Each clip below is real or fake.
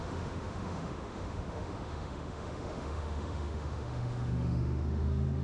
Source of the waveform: fake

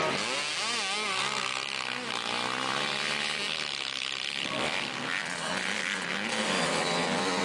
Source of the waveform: real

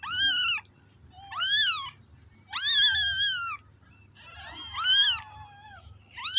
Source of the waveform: real